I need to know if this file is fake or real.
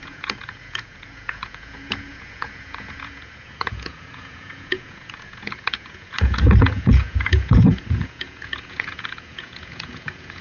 fake